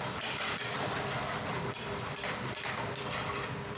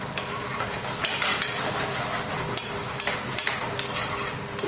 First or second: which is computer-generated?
first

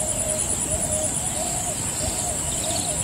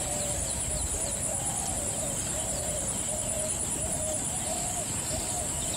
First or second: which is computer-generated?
second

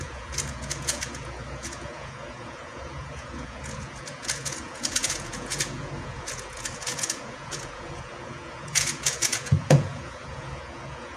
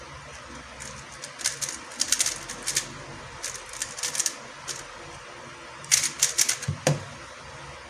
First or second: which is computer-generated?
first